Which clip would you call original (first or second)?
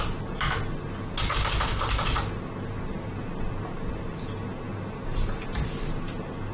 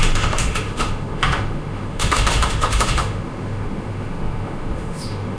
first